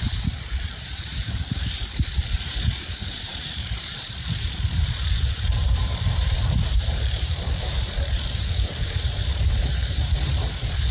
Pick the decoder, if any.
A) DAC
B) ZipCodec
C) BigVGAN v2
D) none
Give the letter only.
C